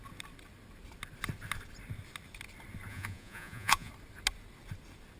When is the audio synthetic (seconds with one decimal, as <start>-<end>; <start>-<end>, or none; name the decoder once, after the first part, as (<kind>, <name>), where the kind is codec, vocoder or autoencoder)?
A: 2.9-3.9 (vocoder, Vocos)